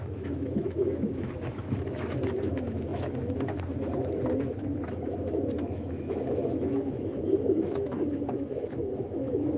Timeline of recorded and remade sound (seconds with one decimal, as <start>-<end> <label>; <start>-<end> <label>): 0.0-9.6 remade